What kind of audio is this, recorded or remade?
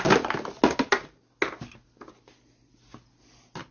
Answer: recorded